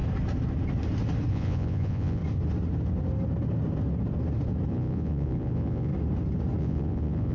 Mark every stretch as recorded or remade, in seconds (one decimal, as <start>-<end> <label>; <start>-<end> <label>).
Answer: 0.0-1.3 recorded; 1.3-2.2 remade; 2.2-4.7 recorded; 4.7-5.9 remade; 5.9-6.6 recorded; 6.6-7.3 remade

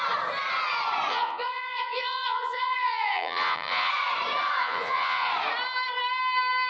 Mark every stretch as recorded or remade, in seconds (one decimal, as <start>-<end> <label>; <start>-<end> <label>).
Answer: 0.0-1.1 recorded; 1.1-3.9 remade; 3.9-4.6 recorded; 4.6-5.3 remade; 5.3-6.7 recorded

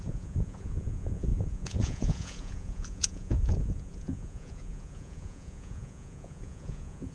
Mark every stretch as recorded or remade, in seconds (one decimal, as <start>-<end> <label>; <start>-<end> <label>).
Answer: 0.0-7.1 remade

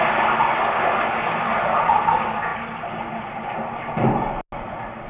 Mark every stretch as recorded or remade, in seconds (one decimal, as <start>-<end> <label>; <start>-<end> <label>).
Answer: 0.0-5.1 recorded

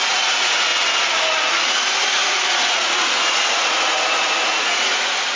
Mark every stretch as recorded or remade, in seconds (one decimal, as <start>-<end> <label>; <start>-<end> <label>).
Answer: 0.0-0.7 remade; 0.7-1.5 recorded; 1.5-5.4 remade

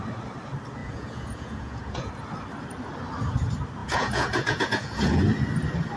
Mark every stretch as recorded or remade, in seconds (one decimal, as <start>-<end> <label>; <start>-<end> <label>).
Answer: 0.0-0.8 recorded; 0.8-2.1 remade; 2.1-3.8 recorded; 3.8-5.2 remade; 5.2-6.0 recorded

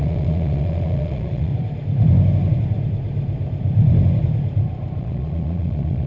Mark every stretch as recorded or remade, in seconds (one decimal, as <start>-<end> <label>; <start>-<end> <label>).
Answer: 0.0-1.5 remade; 1.5-5.0 recorded; 5.0-6.1 remade

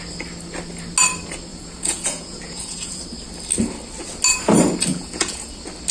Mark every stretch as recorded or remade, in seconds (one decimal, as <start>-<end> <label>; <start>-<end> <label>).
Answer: 0.0-1.5 recorded; 1.5-3.0 remade; 3.0-4.9 recorded; 4.9-5.5 remade; 5.5-5.9 recorded